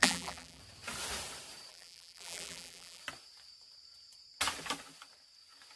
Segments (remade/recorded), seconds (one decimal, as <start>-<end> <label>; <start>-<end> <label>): 0.0-0.6 remade; 0.6-1.7 recorded; 1.7-3.0 remade; 3.0-5.8 recorded